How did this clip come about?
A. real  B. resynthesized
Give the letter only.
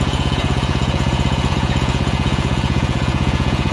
B